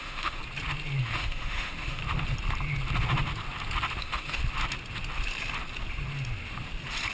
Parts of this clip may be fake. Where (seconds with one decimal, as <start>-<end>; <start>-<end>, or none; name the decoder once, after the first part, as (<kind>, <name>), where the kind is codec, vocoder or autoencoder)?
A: 0.0-0.4 (autoencoder, DAC-VAE); 1.0-2.0; 4.0-4.4